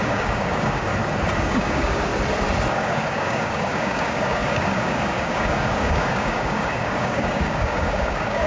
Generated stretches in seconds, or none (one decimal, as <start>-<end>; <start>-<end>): 0.0-0.9; 1.4-2.1; 2.7-8.5